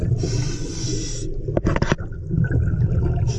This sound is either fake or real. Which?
real